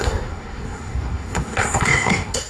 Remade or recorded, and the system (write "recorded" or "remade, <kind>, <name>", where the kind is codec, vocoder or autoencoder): remade, codec, SNAC